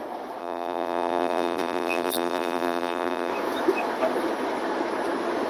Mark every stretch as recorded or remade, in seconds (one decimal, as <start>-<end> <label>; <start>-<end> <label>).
0.0-0.4 recorded; 0.4-3.3 remade; 3.3-5.5 recorded